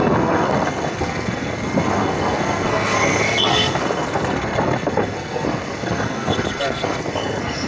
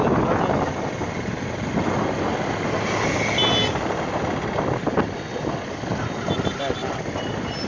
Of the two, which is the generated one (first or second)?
first